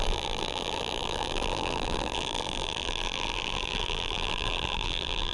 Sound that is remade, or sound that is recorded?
remade